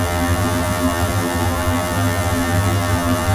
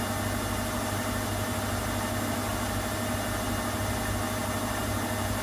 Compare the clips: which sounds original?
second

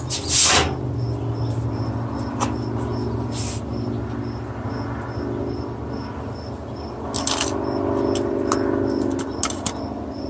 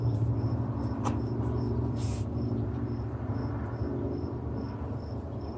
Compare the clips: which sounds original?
first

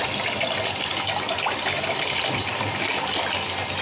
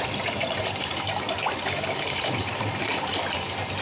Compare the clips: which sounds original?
first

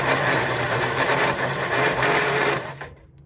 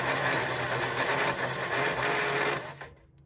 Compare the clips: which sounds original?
second